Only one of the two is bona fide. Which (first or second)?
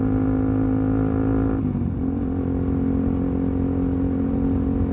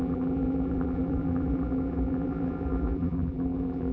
first